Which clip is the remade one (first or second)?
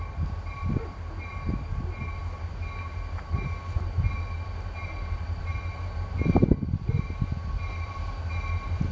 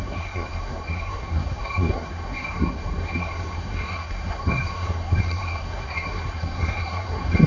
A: second